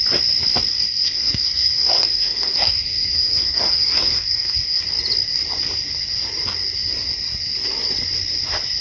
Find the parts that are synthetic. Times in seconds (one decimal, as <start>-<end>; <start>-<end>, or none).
0.7-4.8

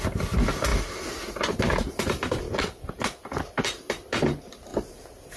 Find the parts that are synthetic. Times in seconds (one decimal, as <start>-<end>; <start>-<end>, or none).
none

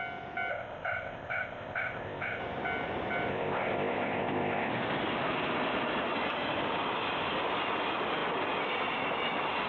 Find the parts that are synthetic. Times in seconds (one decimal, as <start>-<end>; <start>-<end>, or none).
0.5-2.4; 3.3-4.7

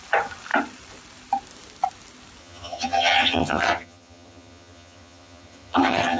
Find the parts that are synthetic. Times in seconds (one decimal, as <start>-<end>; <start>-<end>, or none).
2.4-6.2